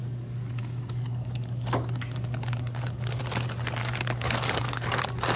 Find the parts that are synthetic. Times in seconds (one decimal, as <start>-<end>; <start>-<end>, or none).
0.0-3.2; 3.8-5.0